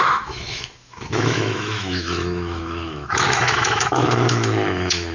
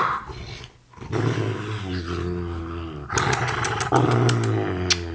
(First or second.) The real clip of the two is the second